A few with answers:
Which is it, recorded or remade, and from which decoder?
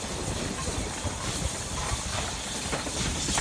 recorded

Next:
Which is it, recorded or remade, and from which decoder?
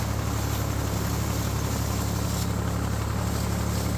recorded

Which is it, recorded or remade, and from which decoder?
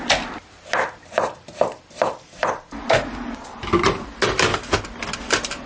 remade, vocoder, BigVGAN v2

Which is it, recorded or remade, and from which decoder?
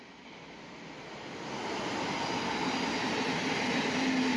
recorded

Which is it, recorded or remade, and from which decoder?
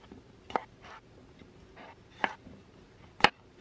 recorded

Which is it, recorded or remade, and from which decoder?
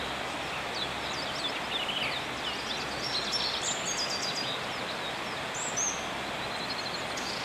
recorded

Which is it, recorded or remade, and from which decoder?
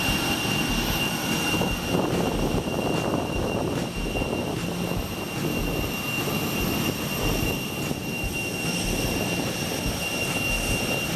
recorded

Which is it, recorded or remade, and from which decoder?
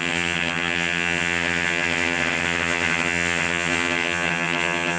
remade, vocoder, HiFi-GAN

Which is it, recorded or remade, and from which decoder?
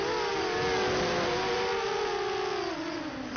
recorded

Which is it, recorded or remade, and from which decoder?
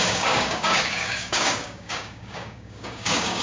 remade, codec, DAC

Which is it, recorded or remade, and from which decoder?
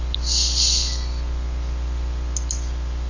recorded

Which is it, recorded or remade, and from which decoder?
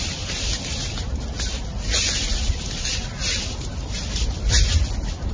recorded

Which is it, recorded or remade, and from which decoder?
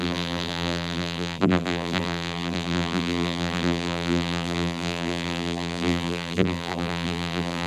remade, vocoder, BigVGAN v2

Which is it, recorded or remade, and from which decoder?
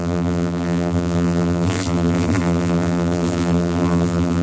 remade, vocoder, BigVGAN v2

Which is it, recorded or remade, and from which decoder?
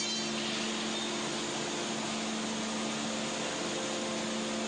recorded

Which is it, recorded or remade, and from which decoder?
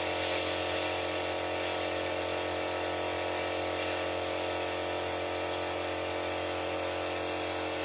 recorded